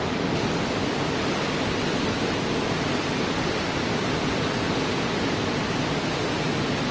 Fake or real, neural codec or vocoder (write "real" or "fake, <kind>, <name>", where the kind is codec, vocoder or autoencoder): real